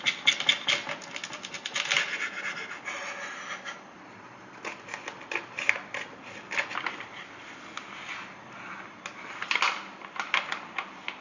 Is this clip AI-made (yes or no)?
no